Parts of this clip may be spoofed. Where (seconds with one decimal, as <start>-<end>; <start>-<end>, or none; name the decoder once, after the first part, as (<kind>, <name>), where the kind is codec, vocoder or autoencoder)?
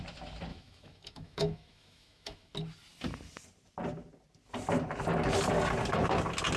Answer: 0.5-2.5 (autoencoder, DAC-VAE)